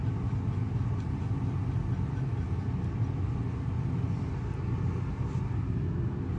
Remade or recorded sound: recorded